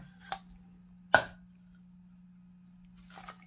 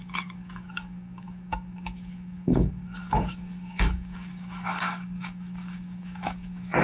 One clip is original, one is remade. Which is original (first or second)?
first